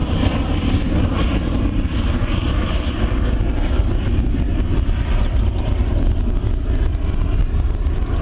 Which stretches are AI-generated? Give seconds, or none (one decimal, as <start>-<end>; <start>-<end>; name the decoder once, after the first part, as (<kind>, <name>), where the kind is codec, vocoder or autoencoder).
none